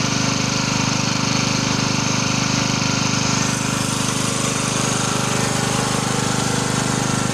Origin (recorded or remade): remade